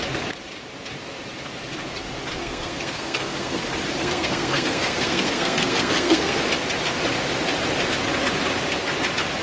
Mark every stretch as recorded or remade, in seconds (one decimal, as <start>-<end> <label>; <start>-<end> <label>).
0.0-2.4 recorded; 2.4-3.6 remade; 3.6-4.0 recorded; 4.0-6.4 remade; 6.4-9.4 recorded